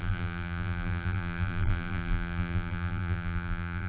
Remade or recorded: remade